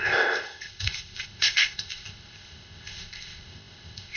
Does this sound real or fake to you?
fake